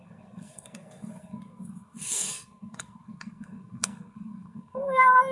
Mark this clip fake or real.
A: fake